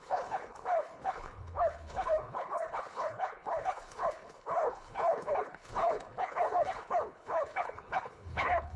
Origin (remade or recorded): remade